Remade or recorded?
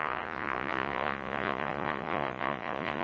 remade